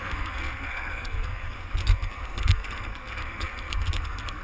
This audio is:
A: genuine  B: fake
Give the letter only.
B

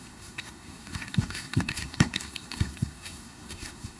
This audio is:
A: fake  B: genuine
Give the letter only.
A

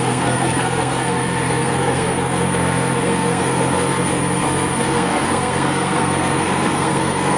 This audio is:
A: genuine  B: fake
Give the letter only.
B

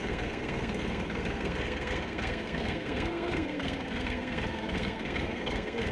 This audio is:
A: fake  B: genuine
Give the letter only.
A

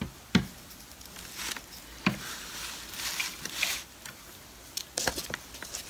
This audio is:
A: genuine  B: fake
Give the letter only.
A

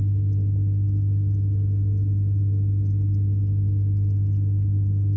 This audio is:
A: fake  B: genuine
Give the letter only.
B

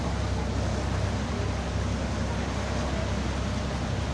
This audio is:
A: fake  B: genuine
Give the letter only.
B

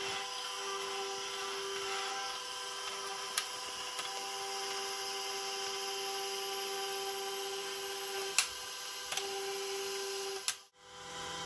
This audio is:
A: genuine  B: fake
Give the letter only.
A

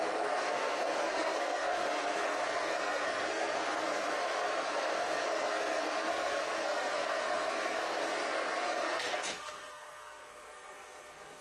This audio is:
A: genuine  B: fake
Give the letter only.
B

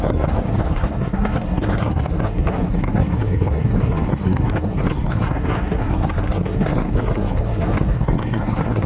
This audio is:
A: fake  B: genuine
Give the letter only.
A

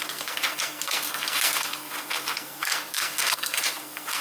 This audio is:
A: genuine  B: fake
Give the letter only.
B